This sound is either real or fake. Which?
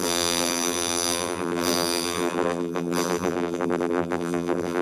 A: fake